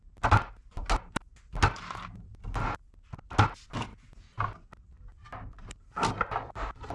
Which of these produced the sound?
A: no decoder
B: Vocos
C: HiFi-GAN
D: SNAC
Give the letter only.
A